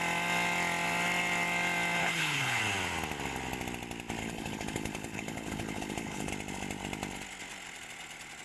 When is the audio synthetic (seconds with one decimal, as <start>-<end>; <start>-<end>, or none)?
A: 2.0-2.6; 4.2-6.3